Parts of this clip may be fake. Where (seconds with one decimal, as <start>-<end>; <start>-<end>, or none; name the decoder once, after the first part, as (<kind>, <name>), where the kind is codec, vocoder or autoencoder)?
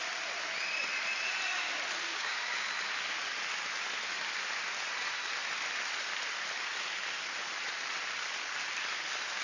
2.1-2.7 (codec, DAC)